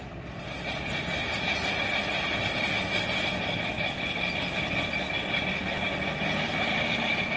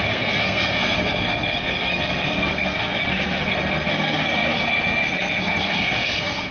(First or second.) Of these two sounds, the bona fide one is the first